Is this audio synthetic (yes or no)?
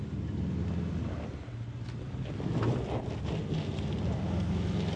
no